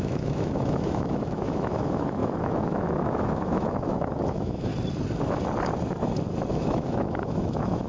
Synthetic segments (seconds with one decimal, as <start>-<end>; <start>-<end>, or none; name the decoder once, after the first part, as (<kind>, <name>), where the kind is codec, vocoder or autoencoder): 0.0-4.7 (autoencoder, DAC-VAE); 6.5-7.9